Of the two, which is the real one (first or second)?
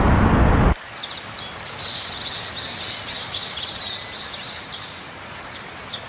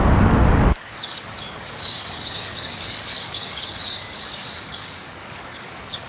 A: first